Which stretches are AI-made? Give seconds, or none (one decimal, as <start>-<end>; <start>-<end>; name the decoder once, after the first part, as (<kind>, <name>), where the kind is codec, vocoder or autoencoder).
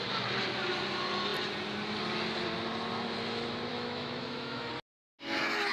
3.7-4.7 (autoencoder, DAC-VAE)